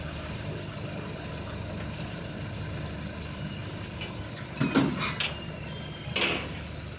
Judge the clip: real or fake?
real